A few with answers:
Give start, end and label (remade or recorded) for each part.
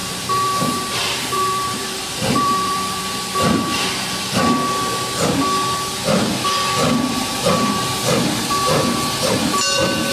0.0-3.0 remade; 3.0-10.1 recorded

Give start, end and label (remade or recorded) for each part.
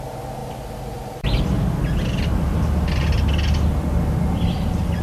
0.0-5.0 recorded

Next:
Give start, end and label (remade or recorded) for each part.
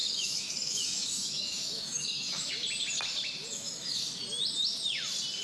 0.0-2.5 remade; 2.5-3.5 recorded; 3.5-4.0 remade; 4.0-5.4 recorded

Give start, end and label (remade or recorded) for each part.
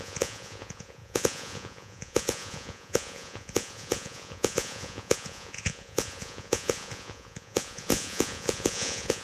0.0-9.2 remade